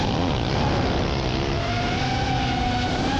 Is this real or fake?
real